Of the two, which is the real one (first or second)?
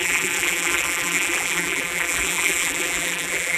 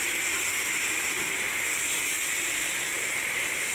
second